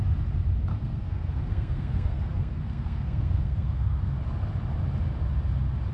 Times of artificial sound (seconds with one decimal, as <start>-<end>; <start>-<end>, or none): 0.7-4.2